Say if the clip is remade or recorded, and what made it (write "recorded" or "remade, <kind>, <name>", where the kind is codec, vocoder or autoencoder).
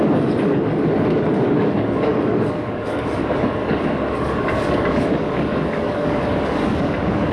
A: remade, codec, DAC